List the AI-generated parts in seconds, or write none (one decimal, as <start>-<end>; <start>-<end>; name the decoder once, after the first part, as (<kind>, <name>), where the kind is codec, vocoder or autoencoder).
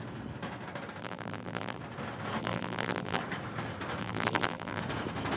1.0-1.8 (vocoder, BigVGAN v2); 2.4-3.2; 4.0-4.8